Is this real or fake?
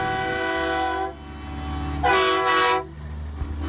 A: real